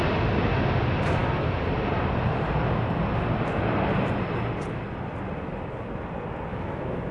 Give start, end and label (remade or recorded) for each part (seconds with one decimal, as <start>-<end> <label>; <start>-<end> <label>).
0.0-6.5 recorded; 6.5-7.1 remade